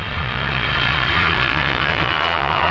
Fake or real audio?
fake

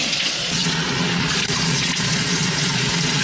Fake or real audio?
fake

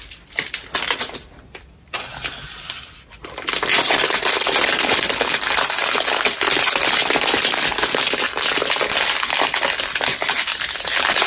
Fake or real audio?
real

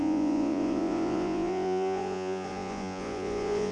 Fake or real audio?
fake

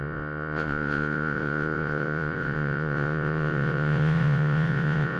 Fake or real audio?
fake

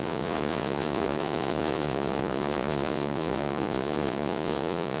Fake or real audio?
fake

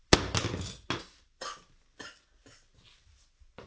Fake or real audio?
real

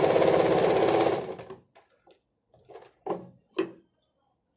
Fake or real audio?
real